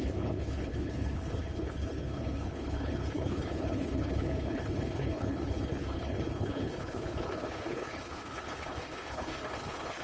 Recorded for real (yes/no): no